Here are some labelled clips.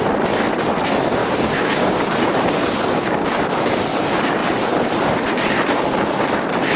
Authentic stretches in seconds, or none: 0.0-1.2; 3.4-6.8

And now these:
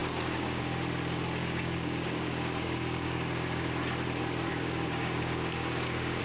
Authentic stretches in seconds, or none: 0.6-1.4; 3.7-4.5

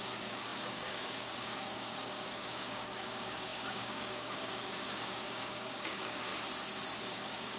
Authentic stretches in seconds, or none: 6.3-7.0

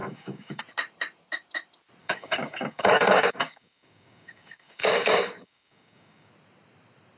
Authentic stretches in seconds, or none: 0.6-2.0; 6.3-7.2